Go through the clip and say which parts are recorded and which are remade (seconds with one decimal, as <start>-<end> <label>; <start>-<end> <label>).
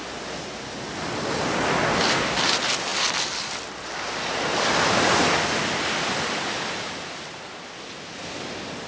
0.0-8.9 recorded